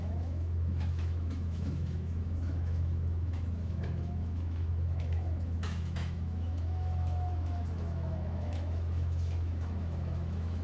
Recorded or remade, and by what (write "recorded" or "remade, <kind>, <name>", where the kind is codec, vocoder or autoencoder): remade, autoencoder, DAC-VAE